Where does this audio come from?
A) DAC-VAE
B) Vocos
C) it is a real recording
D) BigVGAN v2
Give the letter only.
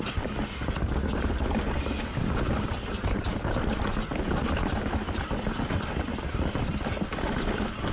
C